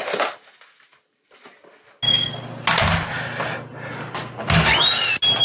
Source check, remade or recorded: recorded